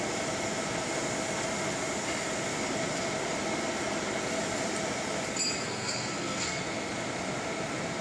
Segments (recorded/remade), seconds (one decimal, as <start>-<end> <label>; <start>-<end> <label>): 0.0-5.6 recorded; 5.6-6.6 remade; 6.6-8.0 recorded